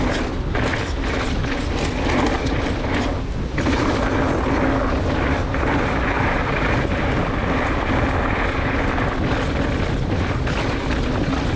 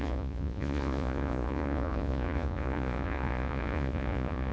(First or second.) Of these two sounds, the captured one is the first